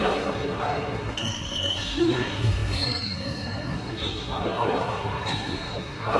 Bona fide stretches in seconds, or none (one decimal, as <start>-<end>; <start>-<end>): none